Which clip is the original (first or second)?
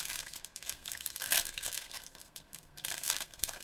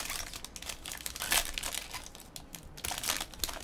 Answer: second